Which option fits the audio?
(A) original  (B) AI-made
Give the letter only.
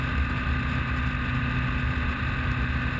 A